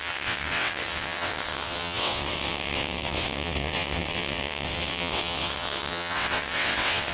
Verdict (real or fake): fake